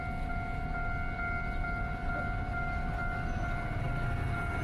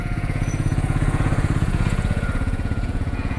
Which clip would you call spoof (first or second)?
second